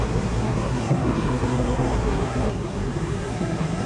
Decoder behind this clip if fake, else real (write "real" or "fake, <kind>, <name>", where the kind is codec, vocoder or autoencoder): fake, codec, SNAC